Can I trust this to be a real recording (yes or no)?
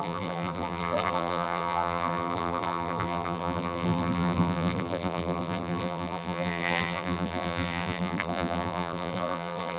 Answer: no